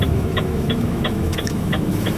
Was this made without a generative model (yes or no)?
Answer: no